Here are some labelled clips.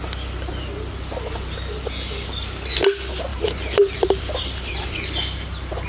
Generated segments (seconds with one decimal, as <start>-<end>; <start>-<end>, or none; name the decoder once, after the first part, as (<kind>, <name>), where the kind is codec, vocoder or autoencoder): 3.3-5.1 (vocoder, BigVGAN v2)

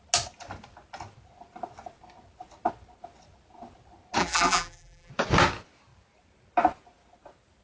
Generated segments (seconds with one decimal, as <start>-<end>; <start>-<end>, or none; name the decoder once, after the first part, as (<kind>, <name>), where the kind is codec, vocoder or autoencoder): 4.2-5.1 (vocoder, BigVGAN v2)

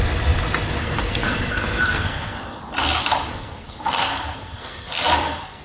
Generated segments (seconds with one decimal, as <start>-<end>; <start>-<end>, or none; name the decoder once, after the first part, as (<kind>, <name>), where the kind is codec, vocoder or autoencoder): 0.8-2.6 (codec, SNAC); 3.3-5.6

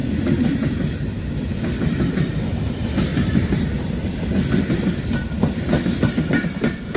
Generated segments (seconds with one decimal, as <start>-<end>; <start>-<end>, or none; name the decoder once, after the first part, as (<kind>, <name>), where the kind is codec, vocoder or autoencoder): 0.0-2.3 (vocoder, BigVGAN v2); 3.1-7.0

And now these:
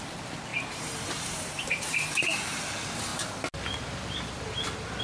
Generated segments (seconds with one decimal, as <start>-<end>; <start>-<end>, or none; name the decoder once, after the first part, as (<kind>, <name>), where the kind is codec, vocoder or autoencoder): 0.5-2.6 (vocoder, BigVGAN v2)

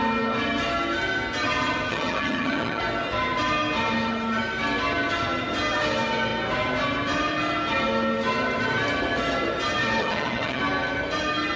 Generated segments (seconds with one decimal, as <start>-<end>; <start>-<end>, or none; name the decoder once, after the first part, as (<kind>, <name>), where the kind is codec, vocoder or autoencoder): 1.9-2.8 (vocoder, HiFi-GAN); 10.0-10.6